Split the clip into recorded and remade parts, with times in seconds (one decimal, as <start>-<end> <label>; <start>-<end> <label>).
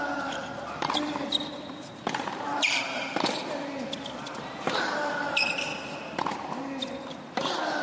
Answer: 0.0-3.4 remade; 3.4-4.4 recorded; 4.4-5.7 remade; 5.7-7.8 recorded